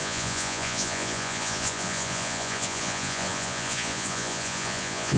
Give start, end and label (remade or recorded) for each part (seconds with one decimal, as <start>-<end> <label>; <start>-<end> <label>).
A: 0.0-5.2 remade